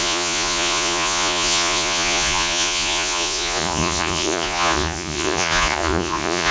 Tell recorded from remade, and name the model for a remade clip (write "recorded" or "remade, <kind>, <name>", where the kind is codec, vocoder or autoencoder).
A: remade, vocoder, Vocos